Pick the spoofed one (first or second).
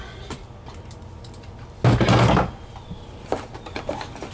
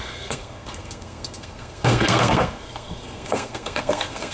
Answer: second